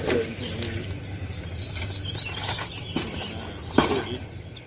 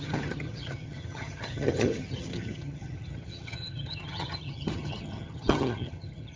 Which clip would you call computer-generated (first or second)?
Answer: second